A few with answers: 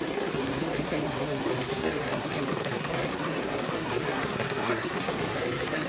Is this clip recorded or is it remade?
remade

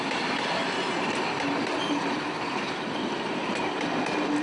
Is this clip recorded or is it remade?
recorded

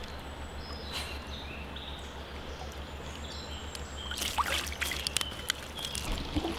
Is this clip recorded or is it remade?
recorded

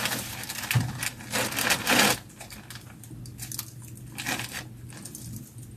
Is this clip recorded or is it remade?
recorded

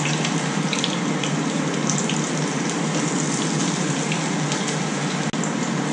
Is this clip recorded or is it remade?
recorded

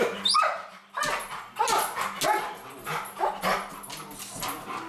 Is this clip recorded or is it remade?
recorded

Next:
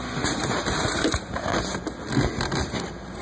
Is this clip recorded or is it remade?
recorded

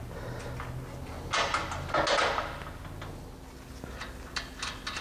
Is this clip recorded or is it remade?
recorded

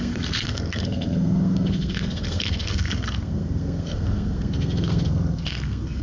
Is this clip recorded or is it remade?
remade